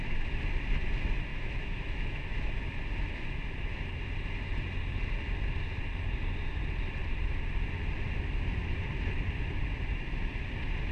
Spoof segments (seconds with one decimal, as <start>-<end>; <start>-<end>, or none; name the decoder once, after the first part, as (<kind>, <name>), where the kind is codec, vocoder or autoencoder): 1.3-2.5 (autoencoder, DAC-VAE)